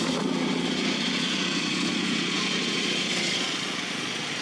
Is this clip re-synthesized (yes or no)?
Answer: yes